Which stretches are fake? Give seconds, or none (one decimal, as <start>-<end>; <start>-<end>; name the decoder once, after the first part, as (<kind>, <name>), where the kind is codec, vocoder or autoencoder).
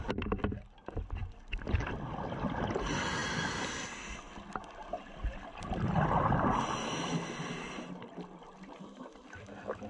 none